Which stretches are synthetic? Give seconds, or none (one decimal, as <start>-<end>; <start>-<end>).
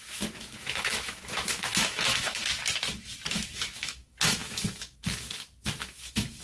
0.0-2.4; 3.3-6.4